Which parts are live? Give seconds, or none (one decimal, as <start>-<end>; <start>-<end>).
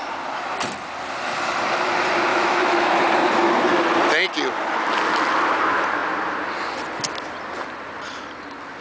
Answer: 0.0-2.3; 3.0-8.8